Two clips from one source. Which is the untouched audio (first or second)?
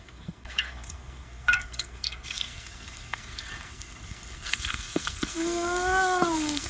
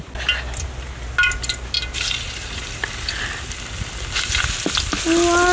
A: second